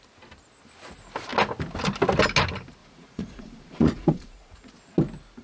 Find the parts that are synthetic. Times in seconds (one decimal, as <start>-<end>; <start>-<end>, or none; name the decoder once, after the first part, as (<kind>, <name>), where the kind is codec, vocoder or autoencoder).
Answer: 2.8-4.7 (vocoder, Vocos)